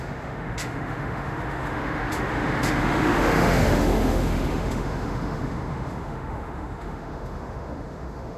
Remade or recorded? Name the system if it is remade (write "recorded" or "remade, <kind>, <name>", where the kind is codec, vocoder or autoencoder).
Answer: remade, autoencoder, DAC-VAE